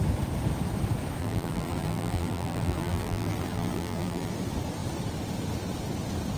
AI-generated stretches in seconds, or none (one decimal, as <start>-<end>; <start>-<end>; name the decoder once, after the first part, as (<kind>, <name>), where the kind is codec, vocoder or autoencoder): 1.2-4.3 (vocoder, BigVGAN v2)